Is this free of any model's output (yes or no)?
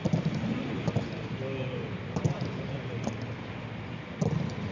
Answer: yes